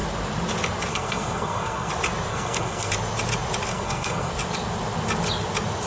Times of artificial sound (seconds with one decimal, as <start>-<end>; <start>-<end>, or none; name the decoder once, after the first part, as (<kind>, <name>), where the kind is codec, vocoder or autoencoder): 0.9-1.9 (codec, SNAC); 2.3-2.9; 3.7-4.3